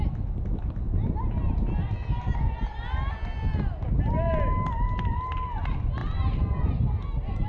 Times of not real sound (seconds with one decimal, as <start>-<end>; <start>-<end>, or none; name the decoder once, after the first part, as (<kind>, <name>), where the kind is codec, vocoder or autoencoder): none